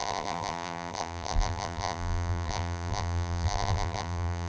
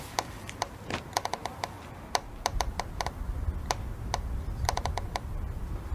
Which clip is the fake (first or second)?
first